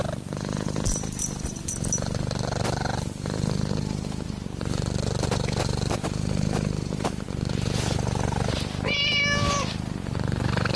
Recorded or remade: recorded